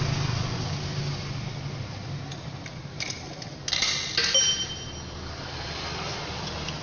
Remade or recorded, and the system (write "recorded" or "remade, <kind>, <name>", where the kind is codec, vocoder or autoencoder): recorded